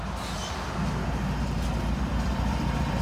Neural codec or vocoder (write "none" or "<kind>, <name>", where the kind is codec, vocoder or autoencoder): none